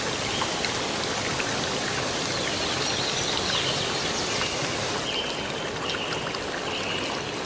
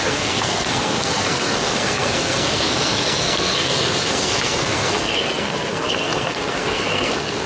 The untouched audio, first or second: first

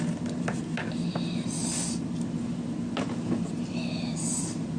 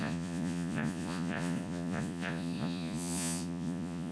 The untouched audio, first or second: first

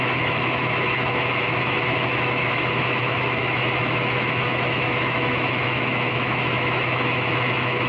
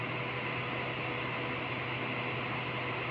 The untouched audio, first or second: second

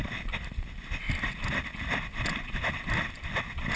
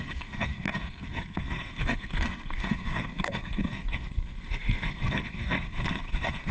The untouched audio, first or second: first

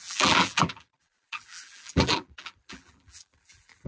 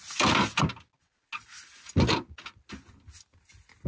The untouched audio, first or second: second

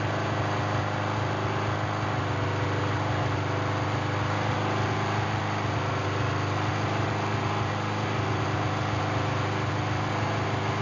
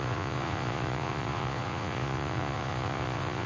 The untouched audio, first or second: first